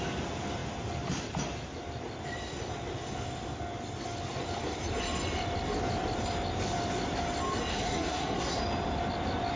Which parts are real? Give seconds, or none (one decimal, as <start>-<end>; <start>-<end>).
0.0-7.7; 8.6-9.6